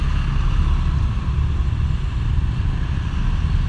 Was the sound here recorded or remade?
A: recorded